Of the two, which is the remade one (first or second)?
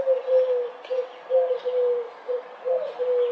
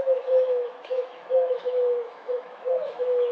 second